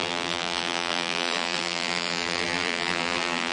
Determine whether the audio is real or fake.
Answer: fake